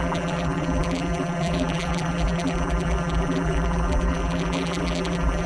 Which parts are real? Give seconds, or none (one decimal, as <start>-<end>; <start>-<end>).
none

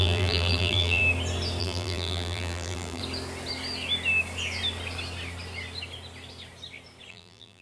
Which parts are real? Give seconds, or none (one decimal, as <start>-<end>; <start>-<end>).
1.0-1.6; 3.0-7.1

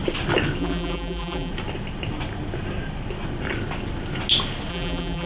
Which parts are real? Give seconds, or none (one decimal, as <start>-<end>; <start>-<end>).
0.0-0.6; 1.5-4.7